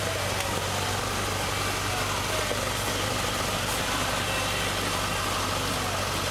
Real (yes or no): yes